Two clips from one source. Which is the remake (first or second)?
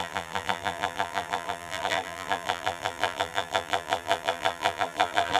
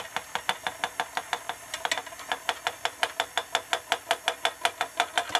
first